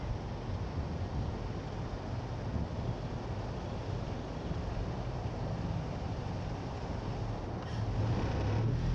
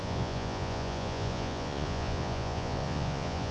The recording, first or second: first